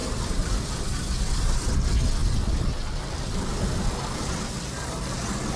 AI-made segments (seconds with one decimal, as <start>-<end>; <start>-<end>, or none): 0.0-1.7; 2.2-5.6

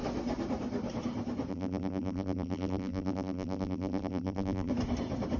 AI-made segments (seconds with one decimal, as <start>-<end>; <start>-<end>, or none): 1.5-4.7

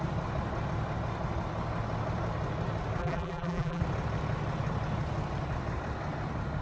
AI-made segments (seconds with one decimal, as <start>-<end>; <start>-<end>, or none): 3.0-3.8

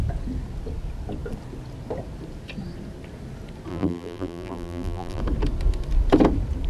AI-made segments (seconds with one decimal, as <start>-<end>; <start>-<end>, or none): 3.7-5.2

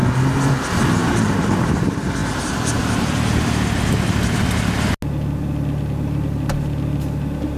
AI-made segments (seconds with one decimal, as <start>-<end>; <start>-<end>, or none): 1.0-1.7

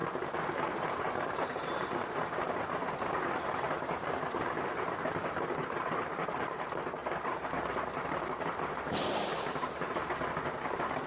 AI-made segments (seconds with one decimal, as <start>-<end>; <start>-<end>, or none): 0.0-5.6; 6.3-11.1

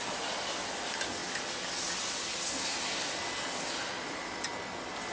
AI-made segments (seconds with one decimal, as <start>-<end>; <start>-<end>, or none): none

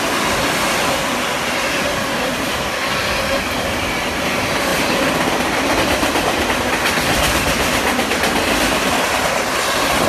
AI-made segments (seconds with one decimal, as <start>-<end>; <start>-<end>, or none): none